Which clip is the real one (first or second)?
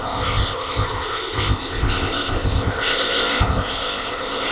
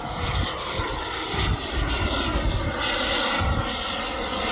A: second